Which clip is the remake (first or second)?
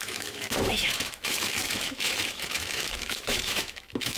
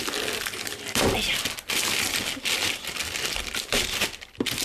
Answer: first